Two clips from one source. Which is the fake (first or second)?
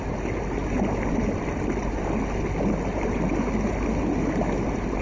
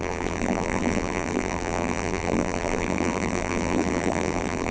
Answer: second